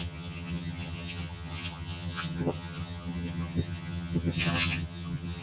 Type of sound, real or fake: fake